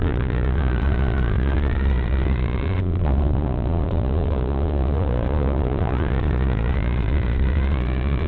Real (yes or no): no